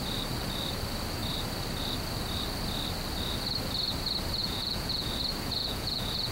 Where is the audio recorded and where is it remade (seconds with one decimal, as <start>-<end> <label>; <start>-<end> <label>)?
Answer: 0.0-4.4 recorded; 4.4-5.1 remade; 5.1-5.6 recorded; 5.6-6.3 remade